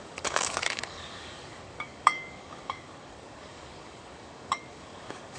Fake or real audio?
fake